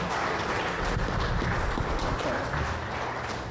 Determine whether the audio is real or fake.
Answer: real